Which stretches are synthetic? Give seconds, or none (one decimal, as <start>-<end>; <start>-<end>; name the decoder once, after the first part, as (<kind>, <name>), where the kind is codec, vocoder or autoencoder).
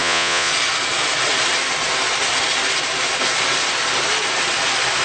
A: 0.0-0.5 (vocoder, Vocos)